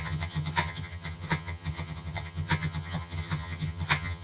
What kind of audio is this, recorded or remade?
remade